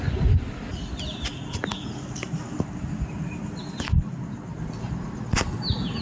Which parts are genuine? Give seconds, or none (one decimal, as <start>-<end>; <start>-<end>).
0.0-6.0